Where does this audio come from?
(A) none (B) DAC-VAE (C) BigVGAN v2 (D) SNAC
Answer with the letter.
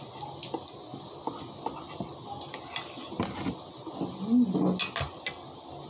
A